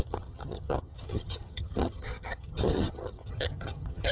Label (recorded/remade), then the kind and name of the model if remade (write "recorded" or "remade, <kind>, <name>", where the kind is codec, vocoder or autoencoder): remade, vocoder, HiFi-GAN